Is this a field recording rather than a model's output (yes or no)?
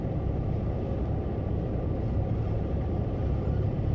no